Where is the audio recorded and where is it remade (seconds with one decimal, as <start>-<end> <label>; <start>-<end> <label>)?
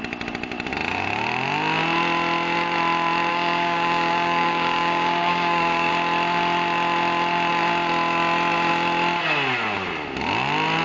0.0-3.3 recorded; 3.3-5.9 remade; 5.9-10.8 recorded